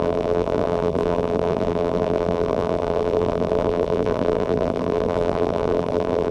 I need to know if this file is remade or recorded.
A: remade